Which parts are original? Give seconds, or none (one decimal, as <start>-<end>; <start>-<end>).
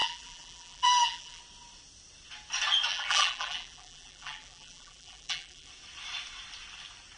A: 1.4-2.9; 5.7-7.2